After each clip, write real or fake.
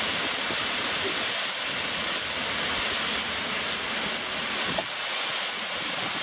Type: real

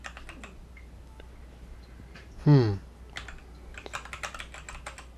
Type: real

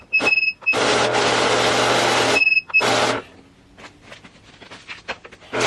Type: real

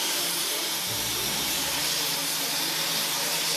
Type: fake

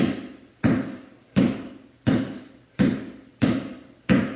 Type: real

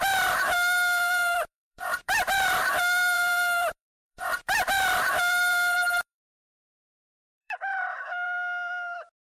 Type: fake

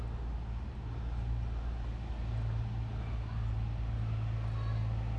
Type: real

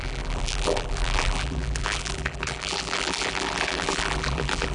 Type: fake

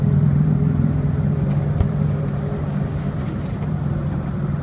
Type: fake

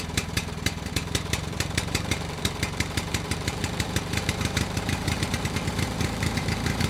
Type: fake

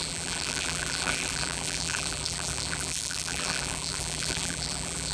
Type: fake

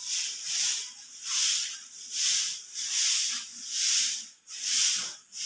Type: fake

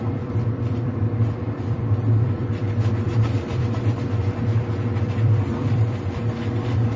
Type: fake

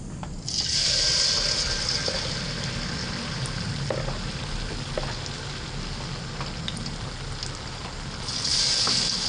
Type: real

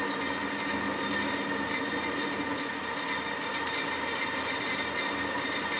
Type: real